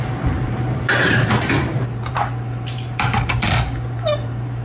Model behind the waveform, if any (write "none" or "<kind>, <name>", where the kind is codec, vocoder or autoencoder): vocoder, BigVGAN v2